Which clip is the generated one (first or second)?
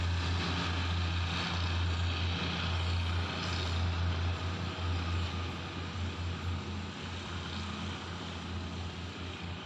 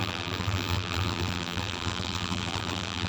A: second